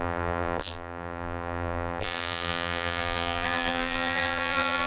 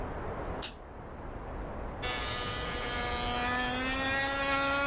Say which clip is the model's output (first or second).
first